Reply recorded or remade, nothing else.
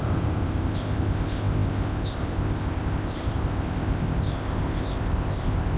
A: remade